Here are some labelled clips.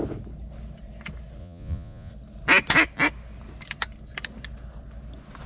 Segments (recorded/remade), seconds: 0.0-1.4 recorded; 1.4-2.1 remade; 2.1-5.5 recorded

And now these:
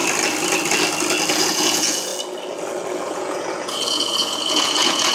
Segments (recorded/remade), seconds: 0.0-1.3 recorded; 1.3-2.1 remade; 2.1-3.0 recorded; 3.0-5.1 remade